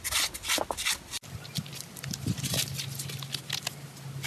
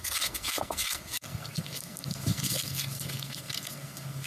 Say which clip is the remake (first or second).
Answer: second